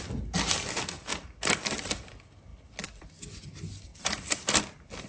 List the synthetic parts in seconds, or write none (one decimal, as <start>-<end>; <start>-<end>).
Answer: 1.1-2.1; 2.5-3.4; 3.9-4.6